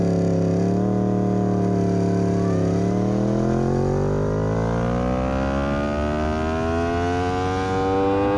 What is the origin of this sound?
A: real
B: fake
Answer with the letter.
A